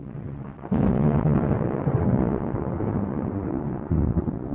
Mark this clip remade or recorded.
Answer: remade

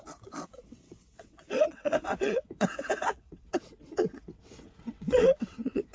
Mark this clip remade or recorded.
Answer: remade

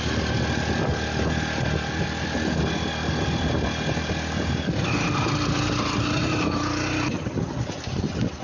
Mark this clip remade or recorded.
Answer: recorded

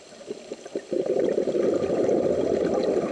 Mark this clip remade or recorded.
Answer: recorded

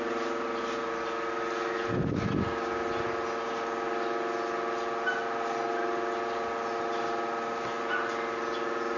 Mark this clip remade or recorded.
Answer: recorded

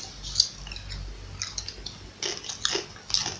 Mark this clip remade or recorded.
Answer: recorded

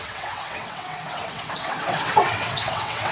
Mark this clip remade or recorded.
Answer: remade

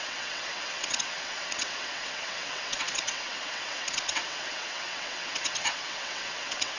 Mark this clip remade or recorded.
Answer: remade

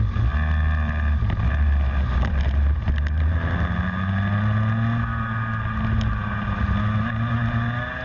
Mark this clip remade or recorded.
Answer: recorded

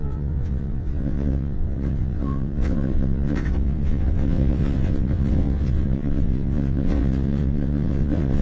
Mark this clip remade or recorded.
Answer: remade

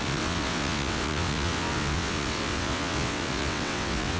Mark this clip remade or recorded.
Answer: remade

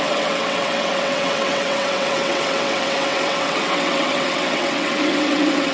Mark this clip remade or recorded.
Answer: remade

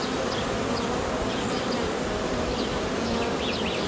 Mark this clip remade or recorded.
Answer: recorded